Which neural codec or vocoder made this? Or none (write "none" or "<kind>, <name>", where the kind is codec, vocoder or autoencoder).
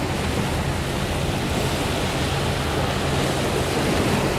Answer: none